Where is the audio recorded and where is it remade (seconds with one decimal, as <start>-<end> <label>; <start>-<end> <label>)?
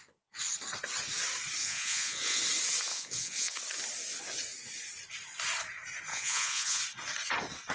0.0-1.6 recorded; 1.6-2.4 remade; 2.4-2.9 recorded; 2.9-3.6 remade; 3.6-6.1 recorded; 6.1-6.8 remade; 6.8-7.7 recorded